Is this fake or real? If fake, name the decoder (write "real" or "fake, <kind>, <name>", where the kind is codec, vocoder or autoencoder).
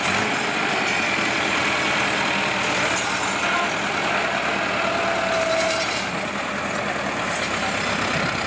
real